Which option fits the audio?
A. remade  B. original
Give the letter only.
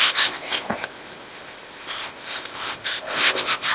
A